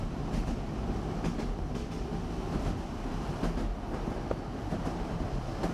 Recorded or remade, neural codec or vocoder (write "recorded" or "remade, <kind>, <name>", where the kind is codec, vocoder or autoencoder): recorded